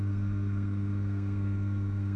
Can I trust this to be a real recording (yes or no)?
no